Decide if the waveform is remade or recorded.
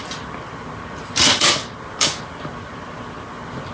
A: recorded